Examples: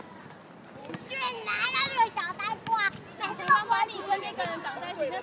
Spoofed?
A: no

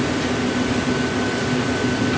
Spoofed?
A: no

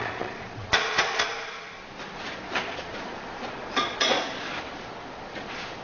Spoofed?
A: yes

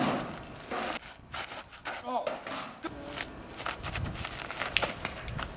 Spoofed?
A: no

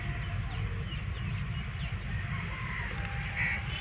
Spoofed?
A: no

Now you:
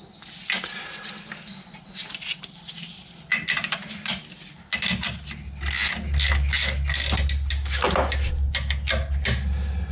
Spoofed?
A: no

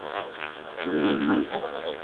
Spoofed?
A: yes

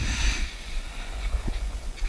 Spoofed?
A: yes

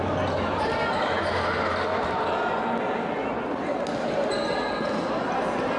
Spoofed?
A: no